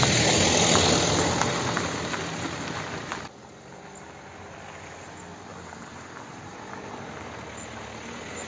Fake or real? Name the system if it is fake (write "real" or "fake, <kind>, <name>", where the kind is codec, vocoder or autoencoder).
real